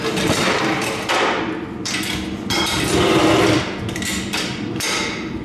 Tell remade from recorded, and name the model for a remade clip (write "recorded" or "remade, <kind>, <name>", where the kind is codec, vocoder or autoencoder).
remade, vocoder, BigVGAN v2